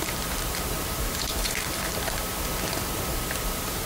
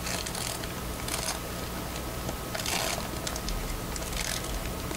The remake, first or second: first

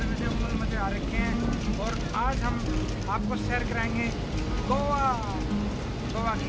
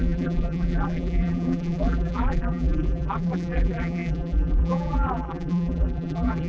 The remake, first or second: second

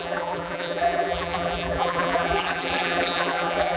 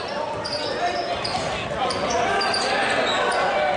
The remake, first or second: first